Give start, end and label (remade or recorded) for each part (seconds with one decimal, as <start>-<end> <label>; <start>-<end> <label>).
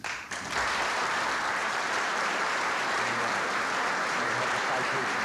0.0-1.6 recorded; 1.6-4.7 remade; 4.7-5.2 recorded